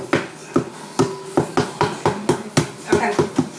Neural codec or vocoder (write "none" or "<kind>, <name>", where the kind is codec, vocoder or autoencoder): none